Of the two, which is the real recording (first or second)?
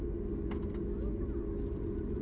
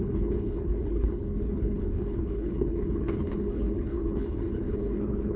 first